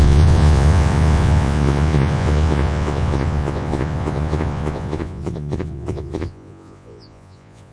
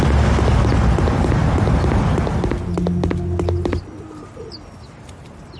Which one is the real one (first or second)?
second